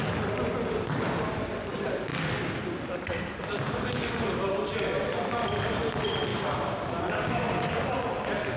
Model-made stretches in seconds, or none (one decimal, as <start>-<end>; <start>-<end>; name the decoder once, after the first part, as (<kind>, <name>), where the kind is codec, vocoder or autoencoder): none